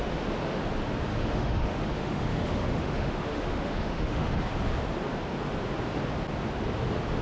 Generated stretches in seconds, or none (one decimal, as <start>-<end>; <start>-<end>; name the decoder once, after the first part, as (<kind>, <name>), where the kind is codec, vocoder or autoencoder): 1.1-4.4 (autoencoder, DAC-VAE)